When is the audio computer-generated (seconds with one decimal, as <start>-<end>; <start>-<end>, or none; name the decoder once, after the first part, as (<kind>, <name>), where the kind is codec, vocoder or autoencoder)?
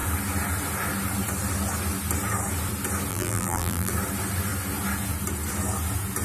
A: 3.1-3.9 (vocoder, BigVGAN v2)